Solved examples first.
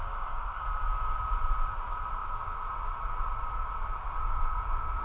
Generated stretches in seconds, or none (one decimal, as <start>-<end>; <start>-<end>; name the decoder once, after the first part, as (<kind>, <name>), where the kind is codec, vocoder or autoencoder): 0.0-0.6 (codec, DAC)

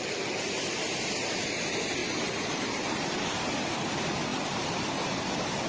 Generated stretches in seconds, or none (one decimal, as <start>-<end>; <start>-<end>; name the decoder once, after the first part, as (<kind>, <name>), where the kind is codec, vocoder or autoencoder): 4.3-5.0 (vocoder, BigVGAN v2)

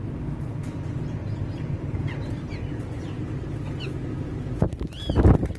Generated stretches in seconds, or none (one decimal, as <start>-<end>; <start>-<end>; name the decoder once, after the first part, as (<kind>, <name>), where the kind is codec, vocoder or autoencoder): 1.2-3.5 (vocoder, BigVGAN v2)

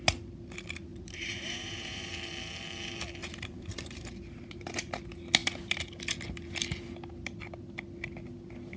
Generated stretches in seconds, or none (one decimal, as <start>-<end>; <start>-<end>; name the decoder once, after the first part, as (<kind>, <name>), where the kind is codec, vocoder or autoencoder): 0.9-2.1 (vocoder, BigVGAN v2); 3.2-4.1